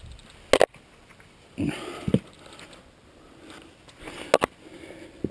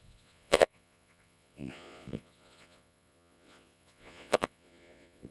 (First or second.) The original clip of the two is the first